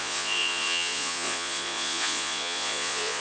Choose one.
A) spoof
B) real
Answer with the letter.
A